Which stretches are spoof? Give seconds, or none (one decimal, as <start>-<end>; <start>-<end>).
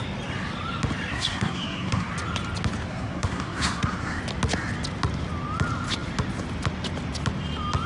1.1-2.1; 2.9-4.2